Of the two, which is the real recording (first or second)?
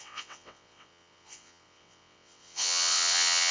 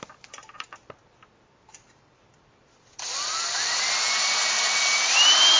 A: second